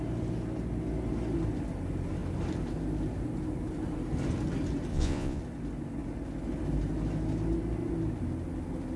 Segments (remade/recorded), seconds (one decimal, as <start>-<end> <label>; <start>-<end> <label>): 0.0-4.9 recorded; 4.9-5.4 remade; 5.4-9.0 recorded